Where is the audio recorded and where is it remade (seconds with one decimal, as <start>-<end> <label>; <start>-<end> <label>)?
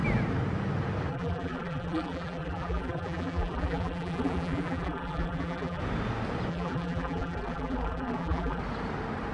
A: 0.0-1.1 recorded; 1.1-5.8 remade; 5.8-6.5 recorded; 6.5-8.6 remade; 8.6-9.3 recorded